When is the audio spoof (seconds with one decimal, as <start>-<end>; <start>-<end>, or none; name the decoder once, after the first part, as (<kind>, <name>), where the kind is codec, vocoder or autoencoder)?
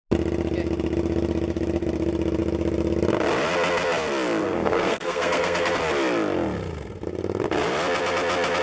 4.4-5.7 (codec, SNAC)